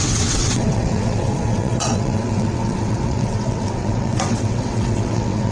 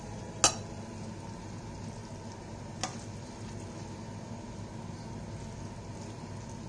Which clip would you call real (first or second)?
second